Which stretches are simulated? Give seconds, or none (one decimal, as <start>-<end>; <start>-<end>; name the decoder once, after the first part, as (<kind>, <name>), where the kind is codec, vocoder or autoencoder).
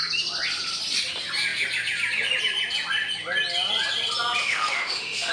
4.4-5.3 (autoencoder, DAC-VAE)